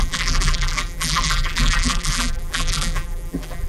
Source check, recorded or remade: remade